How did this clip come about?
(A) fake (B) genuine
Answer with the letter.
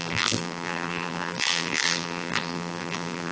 A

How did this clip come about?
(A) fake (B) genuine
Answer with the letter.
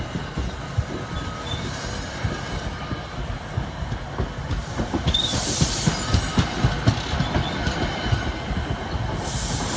B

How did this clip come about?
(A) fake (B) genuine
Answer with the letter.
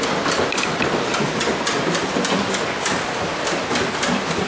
B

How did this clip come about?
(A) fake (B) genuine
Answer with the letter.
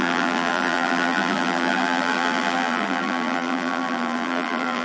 A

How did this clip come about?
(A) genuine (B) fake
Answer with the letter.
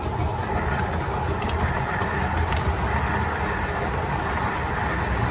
A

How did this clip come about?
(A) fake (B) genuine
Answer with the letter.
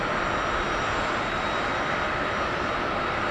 B